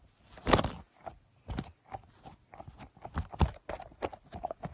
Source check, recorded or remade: recorded